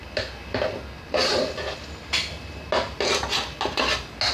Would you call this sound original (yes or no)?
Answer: yes